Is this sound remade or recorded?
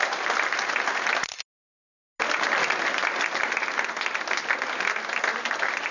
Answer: recorded